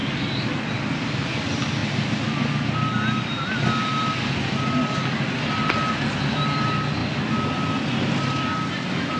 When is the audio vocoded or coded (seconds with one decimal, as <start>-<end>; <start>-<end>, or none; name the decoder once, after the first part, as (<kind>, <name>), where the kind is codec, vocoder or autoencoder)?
none